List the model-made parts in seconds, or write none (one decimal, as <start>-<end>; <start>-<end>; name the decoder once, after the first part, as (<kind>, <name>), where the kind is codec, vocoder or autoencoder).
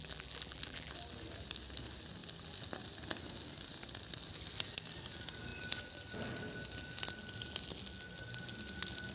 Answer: 0.0-0.9 (vocoder, BigVGAN v2)